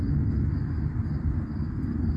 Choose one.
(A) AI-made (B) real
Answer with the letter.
B